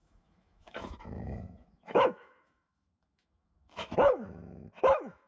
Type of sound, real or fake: fake